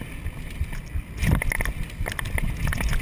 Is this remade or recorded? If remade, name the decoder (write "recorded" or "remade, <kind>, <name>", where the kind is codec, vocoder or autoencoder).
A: recorded